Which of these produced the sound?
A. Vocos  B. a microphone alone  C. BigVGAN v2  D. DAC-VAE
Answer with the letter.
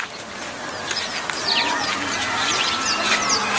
B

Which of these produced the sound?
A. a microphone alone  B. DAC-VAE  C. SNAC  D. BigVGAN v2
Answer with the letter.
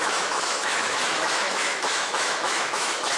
B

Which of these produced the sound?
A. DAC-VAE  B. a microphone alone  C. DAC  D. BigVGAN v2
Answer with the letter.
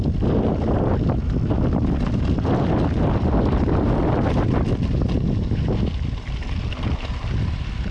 B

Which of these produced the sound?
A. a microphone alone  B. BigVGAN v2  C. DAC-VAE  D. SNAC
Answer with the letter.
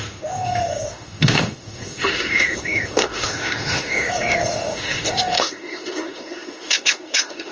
C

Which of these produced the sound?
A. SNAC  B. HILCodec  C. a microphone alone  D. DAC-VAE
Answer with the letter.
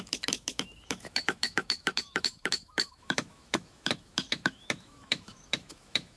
D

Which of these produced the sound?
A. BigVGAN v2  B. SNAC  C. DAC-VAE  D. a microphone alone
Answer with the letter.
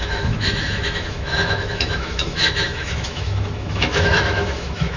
C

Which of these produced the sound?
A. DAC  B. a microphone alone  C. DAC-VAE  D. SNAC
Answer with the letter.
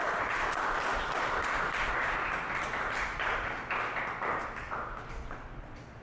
B